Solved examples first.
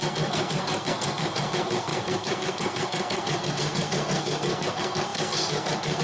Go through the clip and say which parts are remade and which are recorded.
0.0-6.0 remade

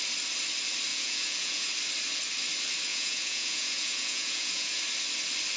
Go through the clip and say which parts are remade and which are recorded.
0.0-0.9 recorded; 0.9-1.7 remade; 1.7-2.9 recorded; 2.9-4.8 remade; 4.8-5.6 recorded

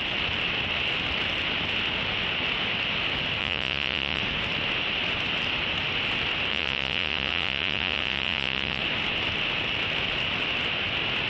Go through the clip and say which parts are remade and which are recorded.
0.0-3.4 recorded; 3.4-4.2 remade; 4.2-6.5 recorded; 6.5-8.8 remade; 8.8-11.3 recorded

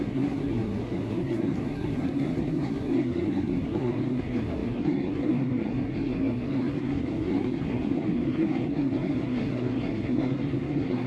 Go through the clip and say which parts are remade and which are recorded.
0.0-11.1 remade